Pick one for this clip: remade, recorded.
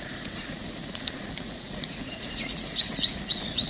remade